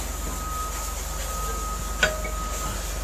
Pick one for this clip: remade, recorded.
recorded